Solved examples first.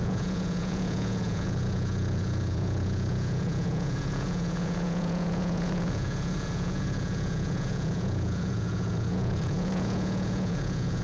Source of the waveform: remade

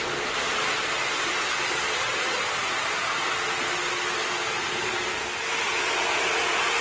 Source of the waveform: recorded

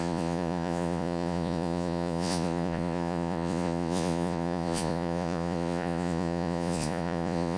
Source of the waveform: remade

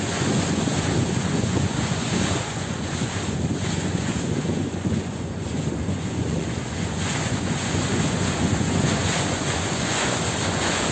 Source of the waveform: remade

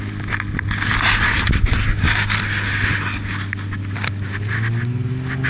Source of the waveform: recorded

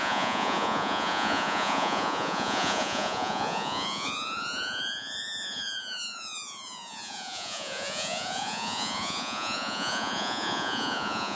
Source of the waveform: remade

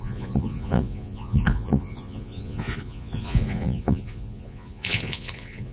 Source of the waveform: remade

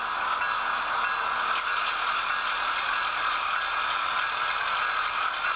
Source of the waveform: recorded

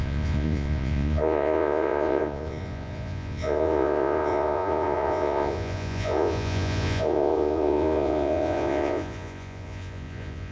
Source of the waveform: remade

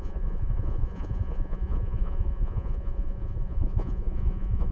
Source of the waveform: remade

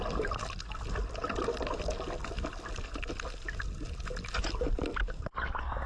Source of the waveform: recorded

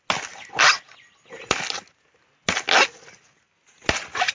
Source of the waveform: recorded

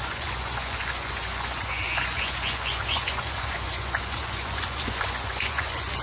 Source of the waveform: remade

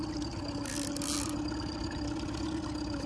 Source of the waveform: recorded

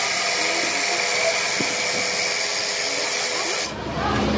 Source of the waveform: recorded